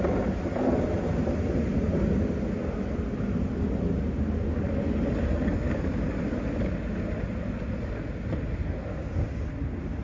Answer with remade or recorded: recorded